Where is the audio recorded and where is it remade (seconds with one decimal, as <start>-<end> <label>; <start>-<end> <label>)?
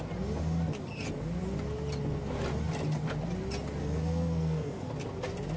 0.0-3.8 recorded; 3.8-4.9 remade; 4.9-5.6 recorded